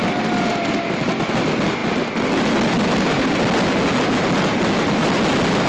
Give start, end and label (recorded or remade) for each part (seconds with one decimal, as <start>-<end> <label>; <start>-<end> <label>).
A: 0.0-5.7 recorded